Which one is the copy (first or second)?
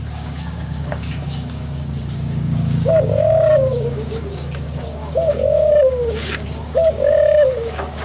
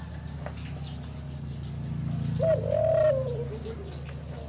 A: first